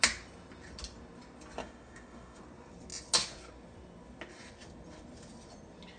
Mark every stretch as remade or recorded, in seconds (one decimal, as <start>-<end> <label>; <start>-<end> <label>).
0.0-1.6 recorded; 1.6-2.4 remade; 2.4-6.0 recorded